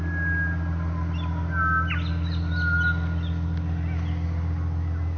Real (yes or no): yes